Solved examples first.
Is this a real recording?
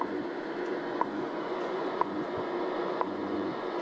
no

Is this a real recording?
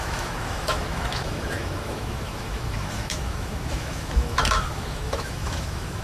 no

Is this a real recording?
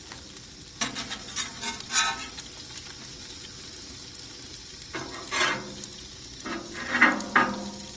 yes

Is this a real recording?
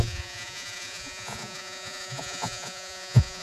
no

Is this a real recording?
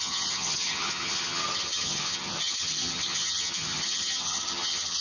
no